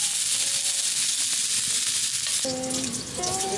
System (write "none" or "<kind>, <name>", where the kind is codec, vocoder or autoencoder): none